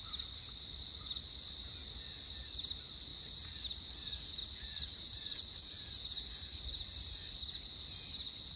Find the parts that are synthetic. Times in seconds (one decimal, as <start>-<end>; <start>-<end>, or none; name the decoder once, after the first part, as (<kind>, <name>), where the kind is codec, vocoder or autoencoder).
3.1-3.6 (vocoder, Vocos); 4.4-6.6